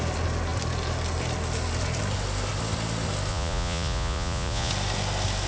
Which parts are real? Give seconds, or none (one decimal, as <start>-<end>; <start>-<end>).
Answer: 0.0-3.3; 4.7-5.5